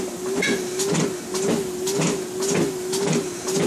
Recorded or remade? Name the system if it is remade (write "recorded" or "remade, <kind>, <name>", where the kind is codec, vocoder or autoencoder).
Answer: recorded